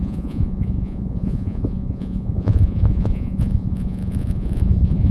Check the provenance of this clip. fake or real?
fake